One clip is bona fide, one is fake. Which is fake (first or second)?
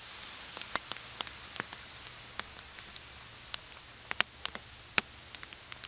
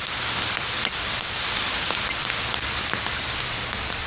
second